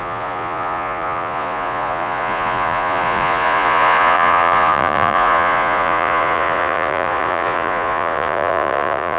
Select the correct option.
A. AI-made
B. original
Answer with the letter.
A